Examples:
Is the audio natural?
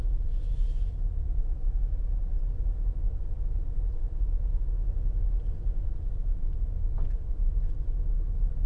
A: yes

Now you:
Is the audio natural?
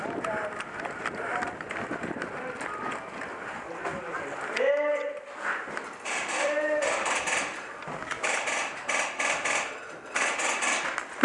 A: yes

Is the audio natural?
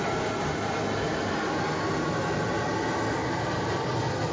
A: yes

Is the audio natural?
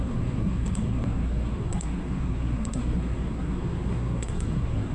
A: no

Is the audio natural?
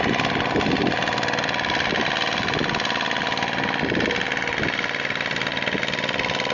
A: yes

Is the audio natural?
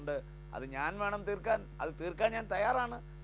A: yes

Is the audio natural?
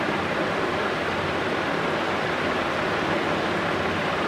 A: yes